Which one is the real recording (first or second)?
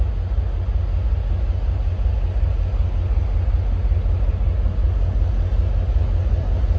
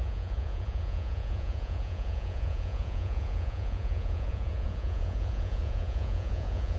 first